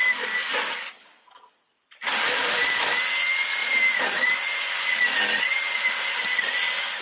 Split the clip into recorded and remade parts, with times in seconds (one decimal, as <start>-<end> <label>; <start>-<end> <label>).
0.0-2.1 recorded; 2.1-2.8 remade; 2.8-3.6 recorded; 3.6-4.3 remade; 4.3-7.0 recorded